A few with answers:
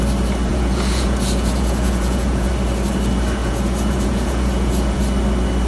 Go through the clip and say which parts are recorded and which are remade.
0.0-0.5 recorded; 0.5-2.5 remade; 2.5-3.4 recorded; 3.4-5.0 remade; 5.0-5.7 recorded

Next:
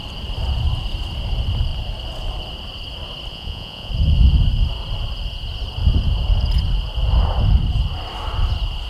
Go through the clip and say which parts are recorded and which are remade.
0.0-3.3 recorded; 3.3-3.9 remade; 3.9-8.9 recorded